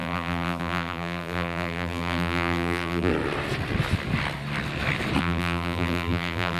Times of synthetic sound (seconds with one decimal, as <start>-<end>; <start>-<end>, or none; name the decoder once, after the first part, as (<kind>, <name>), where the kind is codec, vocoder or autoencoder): 0.0-3.1 (vocoder, BigVGAN v2); 5.2-6.6

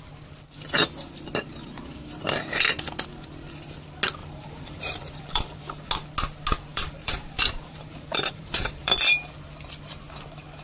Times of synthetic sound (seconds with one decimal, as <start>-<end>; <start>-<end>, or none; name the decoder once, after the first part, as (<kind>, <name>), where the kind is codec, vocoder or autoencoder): 4.2-5.9 (vocoder, BigVGAN v2); 6.7-9.0

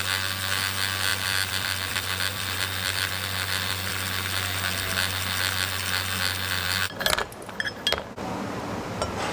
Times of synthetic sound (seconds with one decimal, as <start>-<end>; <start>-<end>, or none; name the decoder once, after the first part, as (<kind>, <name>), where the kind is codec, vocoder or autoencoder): 1.1-3.9 (vocoder, BigVGAN v2)

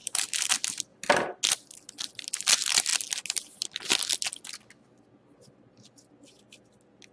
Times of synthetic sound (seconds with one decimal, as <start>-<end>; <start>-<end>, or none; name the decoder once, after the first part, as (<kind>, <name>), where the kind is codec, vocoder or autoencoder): 0.0-0.5 (vocoder, BigVGAN v2)

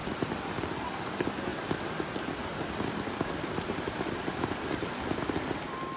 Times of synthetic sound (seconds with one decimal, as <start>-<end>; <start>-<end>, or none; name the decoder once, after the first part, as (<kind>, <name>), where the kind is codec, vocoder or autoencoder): 0.0-1.1 (vocoder, BigVGAN v2); 1.5-5.1